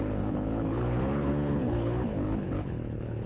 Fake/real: fake